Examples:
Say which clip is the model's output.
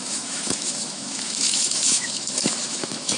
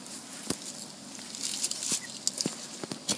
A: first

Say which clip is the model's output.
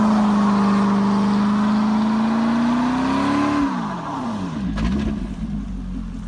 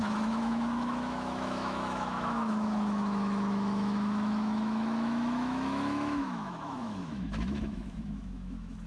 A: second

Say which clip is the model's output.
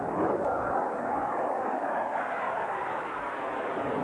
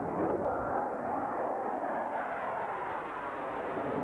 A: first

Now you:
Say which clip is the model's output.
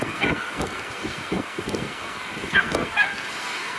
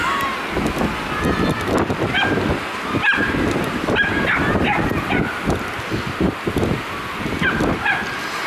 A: first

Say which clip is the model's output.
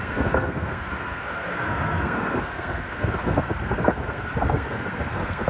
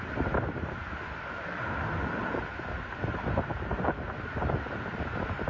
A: first